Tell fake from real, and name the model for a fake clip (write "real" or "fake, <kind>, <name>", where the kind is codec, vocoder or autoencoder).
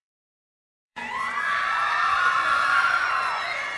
fake, vocoder, Vocos